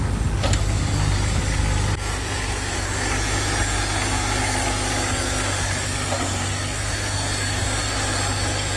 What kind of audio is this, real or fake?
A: real